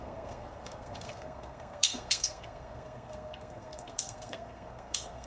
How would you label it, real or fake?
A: fake